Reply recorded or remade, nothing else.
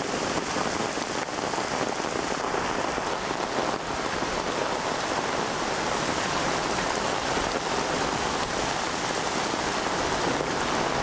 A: recorded